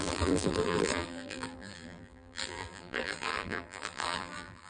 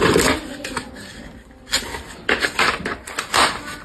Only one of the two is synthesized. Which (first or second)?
first